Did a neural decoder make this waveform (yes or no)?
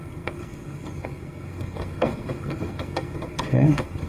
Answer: yes